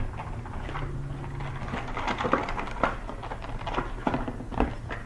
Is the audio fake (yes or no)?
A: no